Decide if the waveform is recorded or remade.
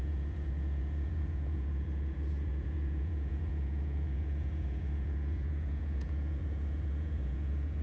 remade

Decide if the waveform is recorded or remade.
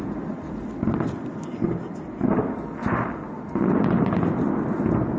recorded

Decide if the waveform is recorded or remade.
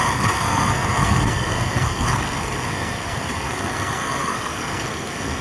remade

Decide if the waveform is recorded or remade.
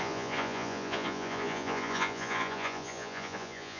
remade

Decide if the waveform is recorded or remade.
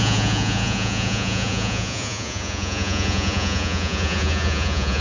remade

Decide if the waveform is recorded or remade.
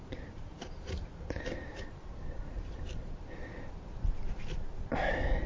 remade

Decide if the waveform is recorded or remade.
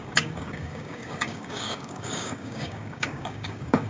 remade